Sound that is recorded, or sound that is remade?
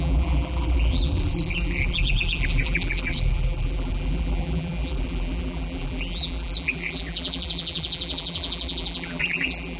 remade